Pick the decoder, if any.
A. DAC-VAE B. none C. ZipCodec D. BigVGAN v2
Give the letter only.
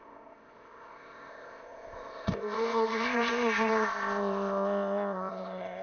C